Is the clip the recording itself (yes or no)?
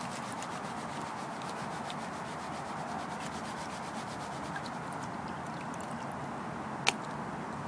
yes